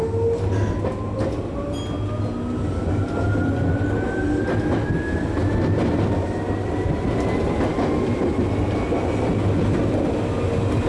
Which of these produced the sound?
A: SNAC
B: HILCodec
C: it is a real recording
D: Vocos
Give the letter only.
C